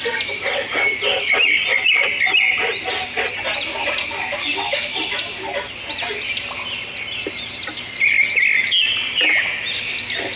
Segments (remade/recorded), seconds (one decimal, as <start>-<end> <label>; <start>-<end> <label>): 0.0-4.0 recorded; 4.0-4.9 remade; 4.9-10.4 recorded